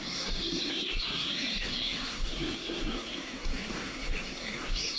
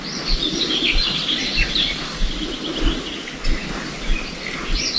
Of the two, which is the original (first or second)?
second